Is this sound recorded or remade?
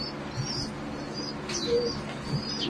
recorded